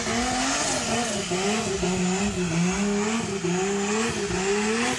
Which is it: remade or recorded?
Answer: recorded